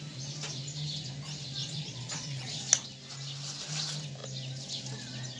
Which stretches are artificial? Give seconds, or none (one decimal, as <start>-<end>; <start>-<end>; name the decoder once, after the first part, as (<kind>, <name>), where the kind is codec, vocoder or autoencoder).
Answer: 1.6-2.6 (vocoder, Vocos)